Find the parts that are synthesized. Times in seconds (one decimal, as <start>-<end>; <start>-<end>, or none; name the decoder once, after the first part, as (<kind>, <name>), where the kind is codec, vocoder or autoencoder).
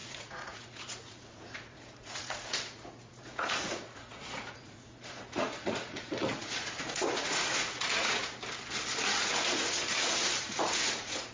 0.0-8.2 (vocoder, Vocos); 9.0-11.3